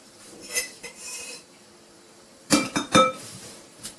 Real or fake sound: fake